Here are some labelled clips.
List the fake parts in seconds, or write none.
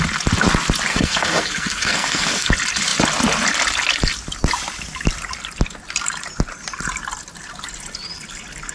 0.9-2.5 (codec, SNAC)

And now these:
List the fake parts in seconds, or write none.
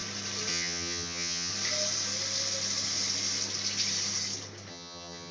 0.5-1.5 (vocoder, HiFi-GAN); 4.7-5.3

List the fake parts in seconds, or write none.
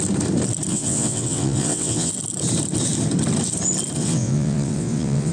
0.7-2.1 (vocoder, WaveNeXt); 4.0-5.3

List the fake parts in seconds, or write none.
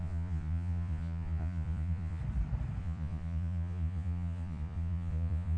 0.0-2.2 (vocoder, Vocos); 2.8-5.6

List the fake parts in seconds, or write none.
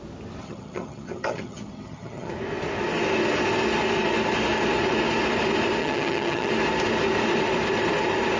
0.4-2.3 (vocoder, HiFi-GAN); 5.8-6.5